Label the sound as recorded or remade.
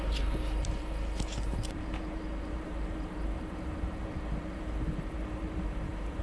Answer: remade